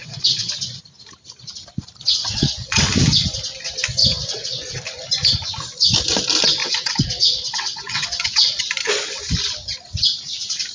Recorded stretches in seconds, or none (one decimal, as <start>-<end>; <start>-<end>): 0.5-2.2; 2.8-4.0; 4.8-6.6; 8.6-10.7